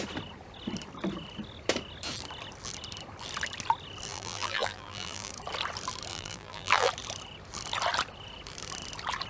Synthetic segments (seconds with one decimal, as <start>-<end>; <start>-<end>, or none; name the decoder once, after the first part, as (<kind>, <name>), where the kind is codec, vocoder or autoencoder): 4.1-5.3 (vocoder, BigVGAN v2); 6.1-6.9